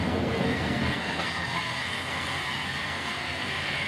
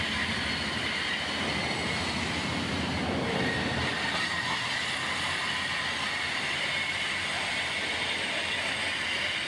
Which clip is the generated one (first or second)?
first